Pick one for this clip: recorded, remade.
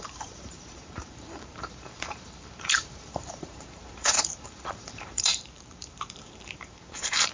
remade